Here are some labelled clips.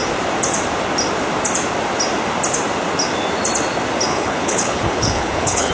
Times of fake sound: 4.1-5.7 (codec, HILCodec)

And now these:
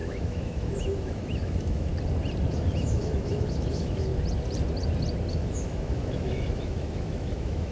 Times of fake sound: 0.0-1.9 (autoencoder, DAC-VAE); 2.5-4.1; 5.3-7.7